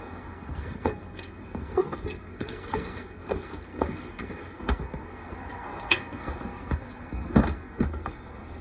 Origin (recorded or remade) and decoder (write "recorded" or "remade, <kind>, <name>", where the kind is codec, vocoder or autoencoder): remade, codec, SNAC